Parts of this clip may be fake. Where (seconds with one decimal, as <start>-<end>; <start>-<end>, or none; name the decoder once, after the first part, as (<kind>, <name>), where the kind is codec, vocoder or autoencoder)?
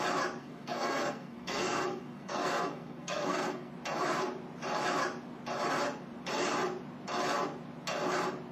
0.4-3.7 (codec, SNAC)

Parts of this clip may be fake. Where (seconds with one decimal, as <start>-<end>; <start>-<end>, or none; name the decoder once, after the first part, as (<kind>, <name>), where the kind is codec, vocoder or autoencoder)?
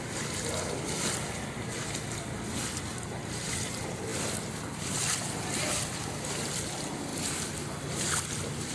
none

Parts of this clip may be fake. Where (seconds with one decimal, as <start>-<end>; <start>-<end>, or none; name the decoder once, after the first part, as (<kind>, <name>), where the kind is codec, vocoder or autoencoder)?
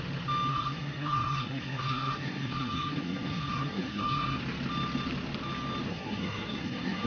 0.5-4.4 (codec, SNAC); 5.9-7.1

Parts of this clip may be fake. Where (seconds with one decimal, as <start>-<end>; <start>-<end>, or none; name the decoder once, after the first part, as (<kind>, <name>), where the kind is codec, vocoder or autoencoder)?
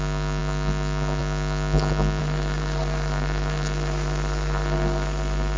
2.2-5.6 (codec, SNAC)